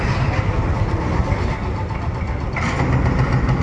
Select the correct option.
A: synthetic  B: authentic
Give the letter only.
B